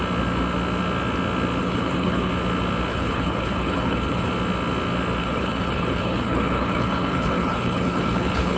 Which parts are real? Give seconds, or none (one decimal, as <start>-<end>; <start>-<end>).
0.0-1.6; 2.3-2.9; 4.3-5.2